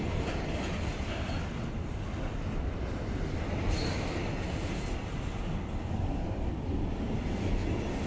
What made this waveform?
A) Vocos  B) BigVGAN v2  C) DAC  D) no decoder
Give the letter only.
D